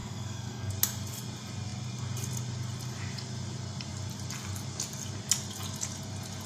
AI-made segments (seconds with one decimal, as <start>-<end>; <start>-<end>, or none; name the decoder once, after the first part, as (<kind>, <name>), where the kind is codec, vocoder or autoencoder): 0.0-0.7 (codec, SNAC)